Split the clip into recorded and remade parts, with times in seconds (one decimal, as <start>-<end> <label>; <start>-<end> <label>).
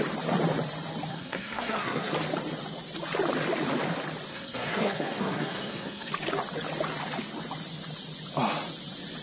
0.0-1.1 recorded; 1.1-2.1 remade; 2.1-4.3 recorded; 4.3-6.1 remade; 6.1-9.2 recorded